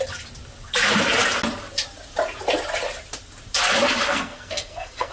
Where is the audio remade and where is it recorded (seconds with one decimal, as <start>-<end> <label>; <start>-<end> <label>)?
0.0-4.0 recorded; 4.0-5.1 remade